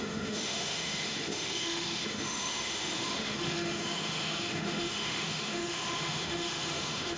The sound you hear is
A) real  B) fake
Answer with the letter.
B